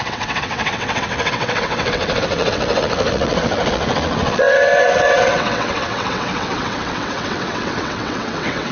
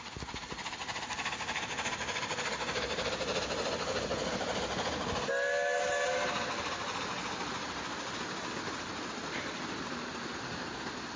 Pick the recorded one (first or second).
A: second